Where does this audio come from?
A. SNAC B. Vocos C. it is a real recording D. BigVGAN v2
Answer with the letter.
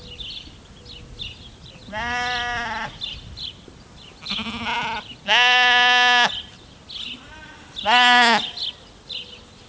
C